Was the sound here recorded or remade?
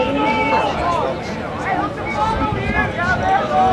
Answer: recorded